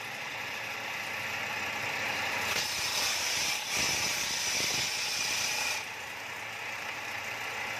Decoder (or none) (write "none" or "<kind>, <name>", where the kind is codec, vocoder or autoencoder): none